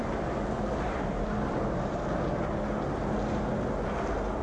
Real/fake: real